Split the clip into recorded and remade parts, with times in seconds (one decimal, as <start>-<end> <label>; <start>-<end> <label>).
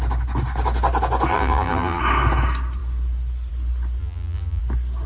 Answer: 0.0-1.3 recorded; 1.3-2.0 remade; 2.0-4.0 recorded; 4.0-4.6 remade; 4.6-5.1 recorded